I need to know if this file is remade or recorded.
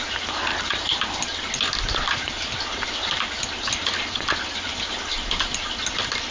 recorded